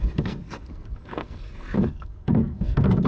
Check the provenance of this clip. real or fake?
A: fake